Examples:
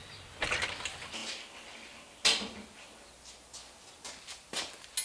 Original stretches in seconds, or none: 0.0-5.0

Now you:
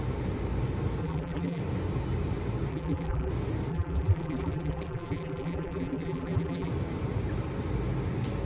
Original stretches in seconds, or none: 0.0-1.0; 1.6-2.7; 3.3-3.7; 6.7-8.5

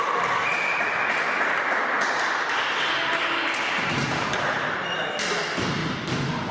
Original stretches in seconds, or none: 0.0-5.8

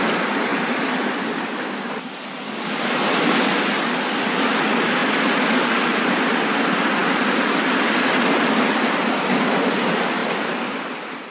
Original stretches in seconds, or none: 0.0-0.5; 2.0-10.2

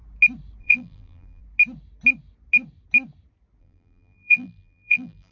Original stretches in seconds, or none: 0.0-0.6; 1.4-3.6

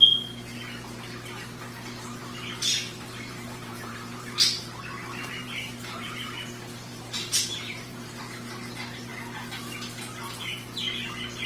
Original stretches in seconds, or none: 0.0-2.2; 6.3-6.9; 8.2-11.5